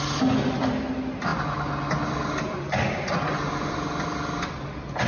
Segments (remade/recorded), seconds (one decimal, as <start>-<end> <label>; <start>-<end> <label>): 0.0-5.1 recorded